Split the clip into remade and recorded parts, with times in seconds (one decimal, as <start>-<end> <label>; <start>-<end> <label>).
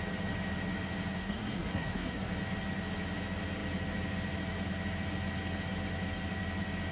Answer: 0.0-1.2 recorded; 1.2-2.3 remade; 2.3-6.9 recorded